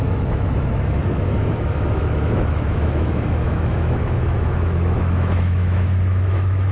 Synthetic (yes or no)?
yes